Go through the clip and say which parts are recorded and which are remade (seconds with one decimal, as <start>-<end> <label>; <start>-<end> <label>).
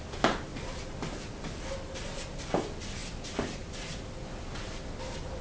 0.0-5.4 recorded